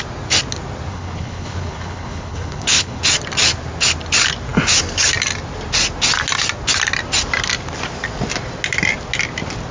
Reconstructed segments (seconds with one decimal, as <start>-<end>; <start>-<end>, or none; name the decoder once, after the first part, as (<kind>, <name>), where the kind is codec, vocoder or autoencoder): 0.9-3.0 (codec, HILCodec)